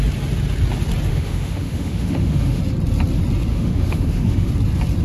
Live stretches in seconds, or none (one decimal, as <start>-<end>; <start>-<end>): 0.0-1.1; 2.6-3.5; 4.5-5.0